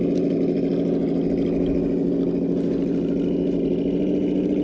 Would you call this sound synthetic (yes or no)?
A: no